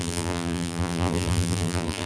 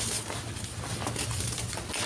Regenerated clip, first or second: first